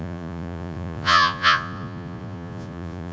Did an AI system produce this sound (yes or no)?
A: yes